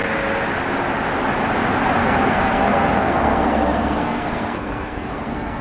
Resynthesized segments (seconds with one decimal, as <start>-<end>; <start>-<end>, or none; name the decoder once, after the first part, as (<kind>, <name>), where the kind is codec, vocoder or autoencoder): 2.0-5.6 (codec, SNAC)